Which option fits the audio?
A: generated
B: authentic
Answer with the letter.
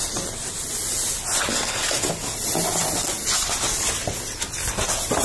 B